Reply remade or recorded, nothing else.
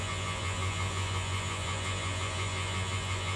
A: remade